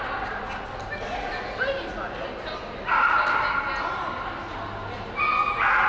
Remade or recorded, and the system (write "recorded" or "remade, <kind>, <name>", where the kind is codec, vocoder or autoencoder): recorded